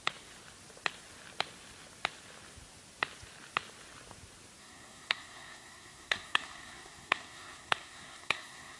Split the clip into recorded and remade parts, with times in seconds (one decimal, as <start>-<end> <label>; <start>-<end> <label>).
0.0-4.6 recorded; 4.6-8.8 remade